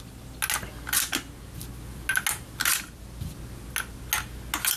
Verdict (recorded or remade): recorded